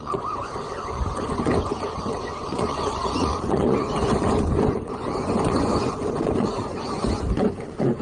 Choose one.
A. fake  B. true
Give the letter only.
A